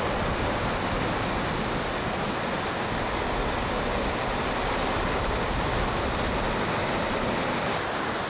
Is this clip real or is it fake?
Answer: real